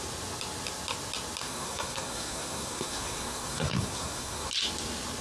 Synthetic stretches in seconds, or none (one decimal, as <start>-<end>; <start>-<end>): 1.4-4.5